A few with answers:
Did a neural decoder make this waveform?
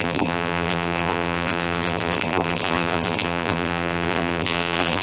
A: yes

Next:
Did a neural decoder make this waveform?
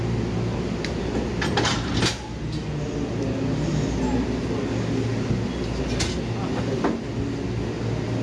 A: no